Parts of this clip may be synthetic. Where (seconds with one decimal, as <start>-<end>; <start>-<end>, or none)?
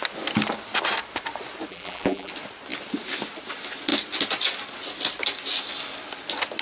1.7-2.3